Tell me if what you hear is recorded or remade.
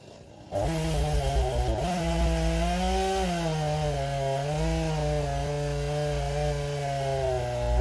recorded